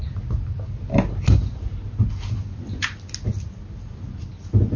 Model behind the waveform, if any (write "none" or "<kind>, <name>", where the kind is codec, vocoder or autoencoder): none